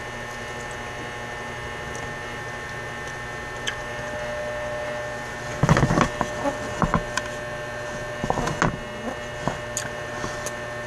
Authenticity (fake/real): real